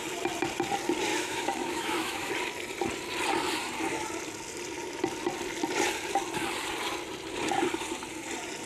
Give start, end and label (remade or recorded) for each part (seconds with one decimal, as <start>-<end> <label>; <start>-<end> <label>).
0.0-1.1 recorded; 1.1-2.3 remade; 2.3-8.7 recorded